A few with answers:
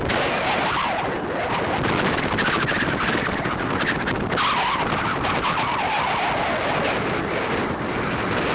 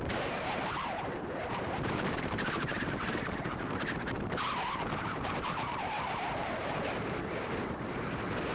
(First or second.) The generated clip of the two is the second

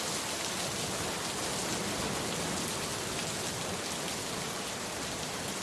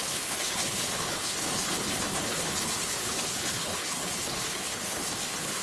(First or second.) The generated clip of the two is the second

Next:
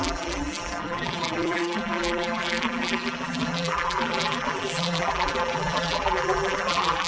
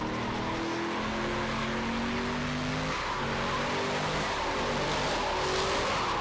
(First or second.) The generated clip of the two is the first